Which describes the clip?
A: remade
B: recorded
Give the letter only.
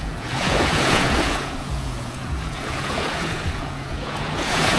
A